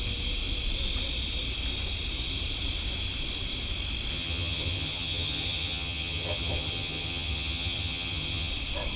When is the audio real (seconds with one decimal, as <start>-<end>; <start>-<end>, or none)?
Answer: 0.0-4.1; 8.5-9.0